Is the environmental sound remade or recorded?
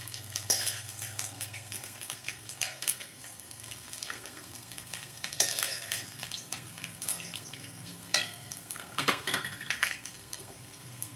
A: remade